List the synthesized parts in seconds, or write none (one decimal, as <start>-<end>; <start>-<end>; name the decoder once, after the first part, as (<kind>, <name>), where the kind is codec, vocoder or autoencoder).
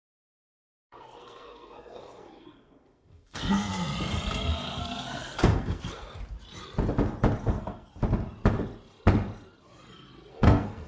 0.0-3.7 (codec, SNAC); 4.3-6.2; 7.4-7.9; 10.3-10.9